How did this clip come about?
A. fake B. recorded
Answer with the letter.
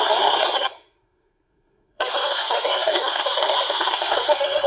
A